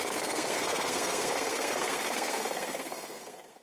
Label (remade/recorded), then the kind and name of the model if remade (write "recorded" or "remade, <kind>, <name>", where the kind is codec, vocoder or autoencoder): remade, codec, SNAC